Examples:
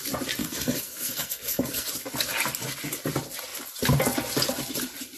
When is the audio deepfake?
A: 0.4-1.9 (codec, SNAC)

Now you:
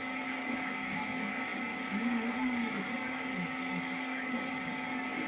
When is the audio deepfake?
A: 0.0-5.3 (codec, DAC)

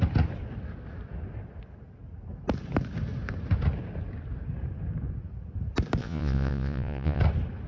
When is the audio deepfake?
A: 6.0-7.2 (vocoder, Vocos)

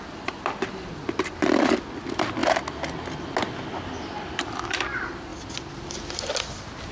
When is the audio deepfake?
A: 0.0-2.4 (vocoder, BigVGAN v2); 4.1-5.3; 6.4-6.9

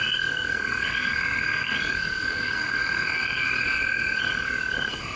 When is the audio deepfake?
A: 0.0-5.2 (codec, SNAC)